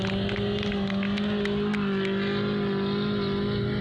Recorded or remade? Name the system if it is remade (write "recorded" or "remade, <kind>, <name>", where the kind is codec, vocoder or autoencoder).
recorded